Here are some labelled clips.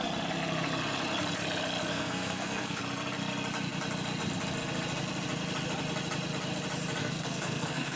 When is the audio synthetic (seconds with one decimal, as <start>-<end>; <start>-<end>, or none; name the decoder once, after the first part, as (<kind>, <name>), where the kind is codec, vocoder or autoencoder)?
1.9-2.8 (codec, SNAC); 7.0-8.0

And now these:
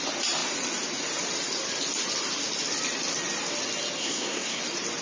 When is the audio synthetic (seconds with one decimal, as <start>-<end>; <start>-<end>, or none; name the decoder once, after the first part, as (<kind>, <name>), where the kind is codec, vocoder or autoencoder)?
4.0-4.6 (codec, SNAC)

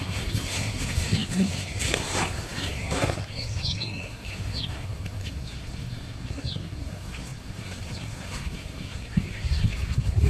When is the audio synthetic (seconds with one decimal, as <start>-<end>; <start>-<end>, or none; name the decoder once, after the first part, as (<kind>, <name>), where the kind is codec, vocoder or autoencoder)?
0.0-10.3 (codec, SNAC)

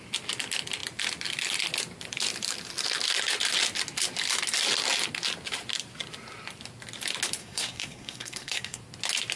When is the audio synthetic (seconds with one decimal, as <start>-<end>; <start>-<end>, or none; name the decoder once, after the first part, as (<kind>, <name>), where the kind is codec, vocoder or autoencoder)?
7.4-8.8 (codec, SNAC)